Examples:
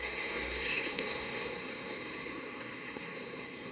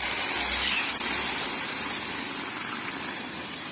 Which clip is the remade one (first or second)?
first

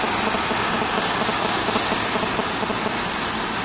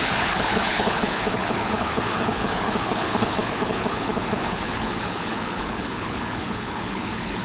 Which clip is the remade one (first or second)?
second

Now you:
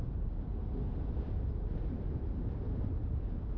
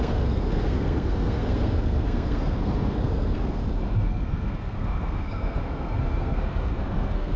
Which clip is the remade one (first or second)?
second